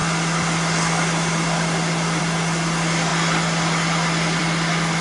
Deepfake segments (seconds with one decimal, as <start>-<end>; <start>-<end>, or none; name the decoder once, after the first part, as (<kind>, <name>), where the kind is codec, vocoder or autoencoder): none